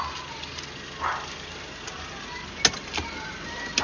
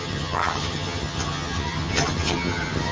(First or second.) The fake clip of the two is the second